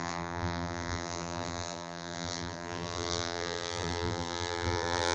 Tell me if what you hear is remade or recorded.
remade